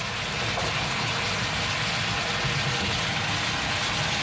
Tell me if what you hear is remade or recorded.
recorded